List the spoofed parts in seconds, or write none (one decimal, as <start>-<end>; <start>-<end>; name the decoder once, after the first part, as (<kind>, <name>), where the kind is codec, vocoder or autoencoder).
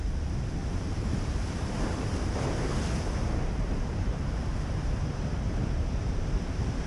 0.6-4.2 (vocoder, BigVGAN v2); 4.8-6.9